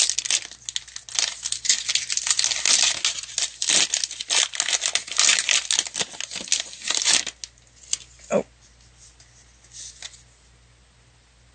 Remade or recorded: recorded